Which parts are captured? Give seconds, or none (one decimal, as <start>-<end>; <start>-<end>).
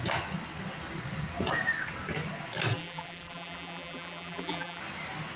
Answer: 0.0-2.7; 4.8-5.4